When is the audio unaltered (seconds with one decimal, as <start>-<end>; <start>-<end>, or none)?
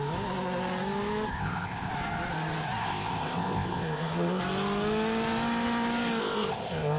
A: 0.0-1.3; 1.9-2.8; 4.4-6.2